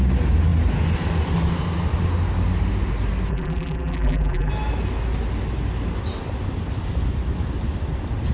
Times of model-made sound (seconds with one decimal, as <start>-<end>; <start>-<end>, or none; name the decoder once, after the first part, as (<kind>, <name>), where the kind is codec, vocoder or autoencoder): 3.3-4.5 (vocoder, BigVGAN v2)